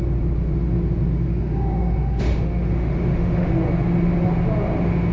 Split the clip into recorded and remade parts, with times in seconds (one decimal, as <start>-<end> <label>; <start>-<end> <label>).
0.0-1.3 recorded; 1.3-3.5 remade; 3.5-5.1 recorded